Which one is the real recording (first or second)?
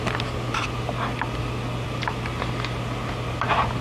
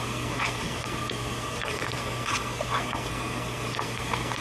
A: first